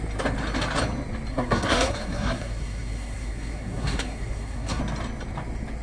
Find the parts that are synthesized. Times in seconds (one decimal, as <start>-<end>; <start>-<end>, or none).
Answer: 1.3-4.8